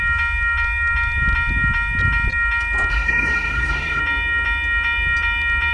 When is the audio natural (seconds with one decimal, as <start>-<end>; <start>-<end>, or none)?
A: 0.0-2.9; 4.0-5.7